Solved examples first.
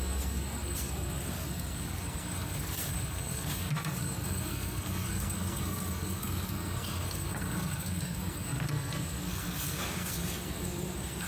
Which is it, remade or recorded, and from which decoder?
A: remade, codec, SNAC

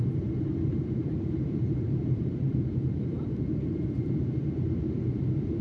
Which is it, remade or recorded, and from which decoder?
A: remade, vocoder, BigVGAN v2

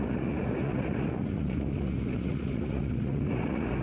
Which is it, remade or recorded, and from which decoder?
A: remade, vocoder, Vocos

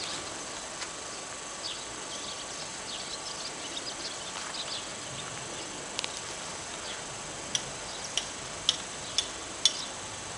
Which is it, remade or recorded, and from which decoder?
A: recorded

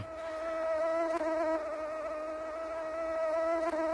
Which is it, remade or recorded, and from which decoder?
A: recorded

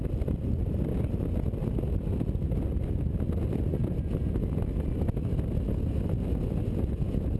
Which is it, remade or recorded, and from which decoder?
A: recorded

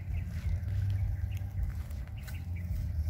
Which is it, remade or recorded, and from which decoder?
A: recorded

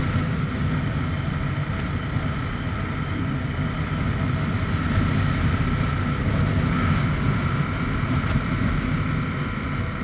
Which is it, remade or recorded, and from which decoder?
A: recorded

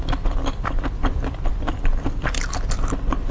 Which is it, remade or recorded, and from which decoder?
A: recorded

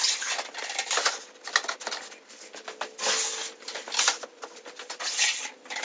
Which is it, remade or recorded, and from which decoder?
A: recorded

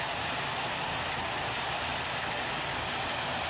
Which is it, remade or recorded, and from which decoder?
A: recorded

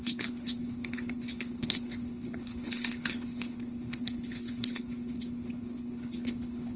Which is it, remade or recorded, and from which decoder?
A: remade, codec, HILCodec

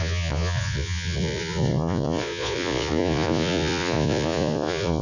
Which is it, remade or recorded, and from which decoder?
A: remade, vocoder, Vocos